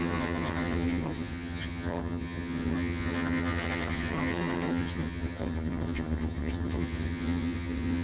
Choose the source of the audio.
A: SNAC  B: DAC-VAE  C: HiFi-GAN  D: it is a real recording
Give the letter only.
C